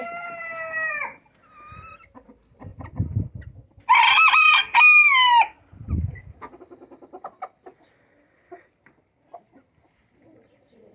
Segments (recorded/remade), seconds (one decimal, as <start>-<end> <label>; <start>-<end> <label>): 0.0-10.9 recorded